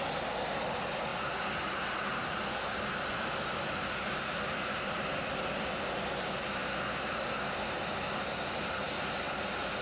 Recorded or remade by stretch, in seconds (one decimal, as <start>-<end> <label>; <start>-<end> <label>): 0.0-9.8 recorded